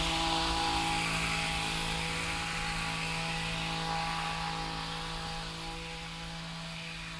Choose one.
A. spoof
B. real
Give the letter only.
B